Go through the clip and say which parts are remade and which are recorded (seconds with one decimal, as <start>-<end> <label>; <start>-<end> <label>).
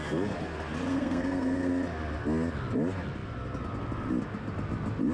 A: 0.0-0.9 recorded; 0.9-1.7 remade; 1.7-5.1 recorded